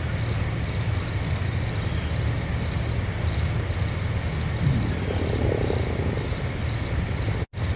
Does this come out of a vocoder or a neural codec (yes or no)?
no